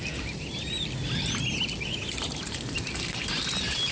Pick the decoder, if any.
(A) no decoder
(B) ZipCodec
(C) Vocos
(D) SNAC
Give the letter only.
A